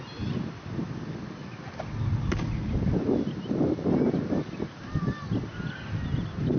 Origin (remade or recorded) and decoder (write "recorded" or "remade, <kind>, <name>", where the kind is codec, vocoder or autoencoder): recorded